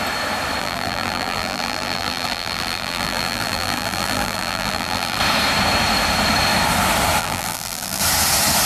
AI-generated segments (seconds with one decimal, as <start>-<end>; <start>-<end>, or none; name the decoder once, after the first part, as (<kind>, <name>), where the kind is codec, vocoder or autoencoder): 0.6-5.2 (vocoder, BigVGAN v2); 7.2-8.0